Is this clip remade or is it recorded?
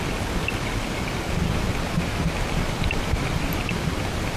recorded